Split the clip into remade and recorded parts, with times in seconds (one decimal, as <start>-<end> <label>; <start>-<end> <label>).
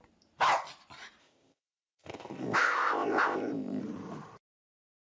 0.0-1.2 recorded; 1.2-3.8 remade; 3.8-5.1 recorded